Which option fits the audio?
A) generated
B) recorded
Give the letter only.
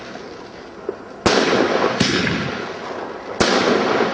B